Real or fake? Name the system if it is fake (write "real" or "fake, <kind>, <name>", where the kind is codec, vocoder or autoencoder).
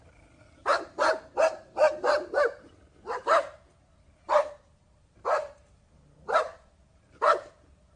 real